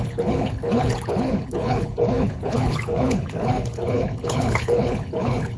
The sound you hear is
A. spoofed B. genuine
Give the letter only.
A